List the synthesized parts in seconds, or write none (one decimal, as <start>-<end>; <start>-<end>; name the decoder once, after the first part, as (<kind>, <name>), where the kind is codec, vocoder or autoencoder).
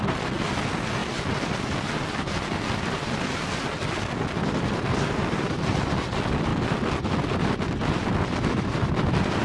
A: none